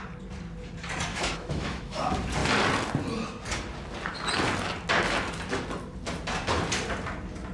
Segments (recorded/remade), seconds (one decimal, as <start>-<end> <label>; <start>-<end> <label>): 0.0-1.1 recorded; 1.1-2.0 remade; 2.0-7.5 recorded